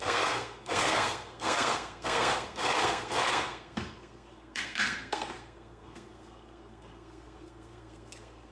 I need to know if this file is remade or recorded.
remade